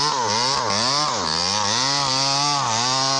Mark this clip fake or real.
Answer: real